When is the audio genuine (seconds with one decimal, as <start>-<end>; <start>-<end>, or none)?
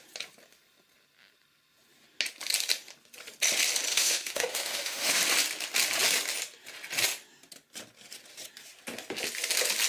0.0-3.9; 5.2-9.9